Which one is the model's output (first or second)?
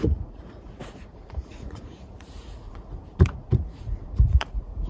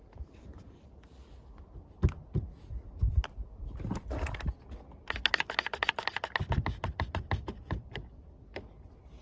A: first